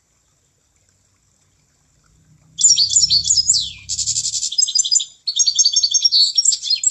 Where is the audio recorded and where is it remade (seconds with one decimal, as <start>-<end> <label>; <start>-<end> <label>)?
0.0-3.2 recorded; 3.2-5.0 remade; 5.0-6.9 recorded